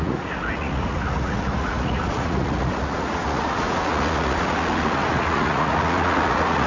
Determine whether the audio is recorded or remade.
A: remade